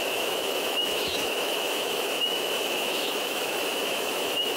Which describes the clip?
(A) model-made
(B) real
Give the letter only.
A